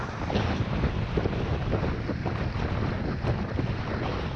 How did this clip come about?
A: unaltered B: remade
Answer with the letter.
A